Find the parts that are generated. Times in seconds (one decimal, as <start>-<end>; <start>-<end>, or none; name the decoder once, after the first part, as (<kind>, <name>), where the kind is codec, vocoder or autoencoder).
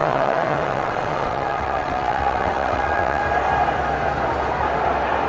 0.0-3.2 (vocoder, WaveNeXt)